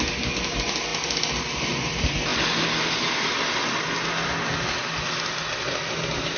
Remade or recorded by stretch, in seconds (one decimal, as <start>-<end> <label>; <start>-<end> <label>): 0.0-6.4 recorded